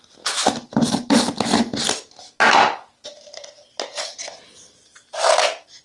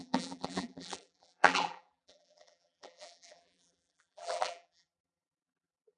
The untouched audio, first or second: first